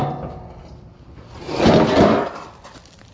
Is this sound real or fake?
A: real